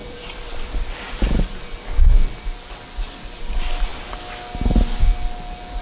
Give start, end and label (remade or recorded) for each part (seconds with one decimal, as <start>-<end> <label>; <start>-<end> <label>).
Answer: 0.0-2.7 remade; 2.7-5.8 recorded